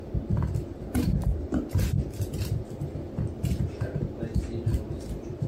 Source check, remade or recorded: recorded